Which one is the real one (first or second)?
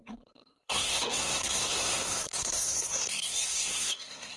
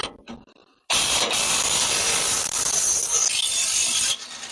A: second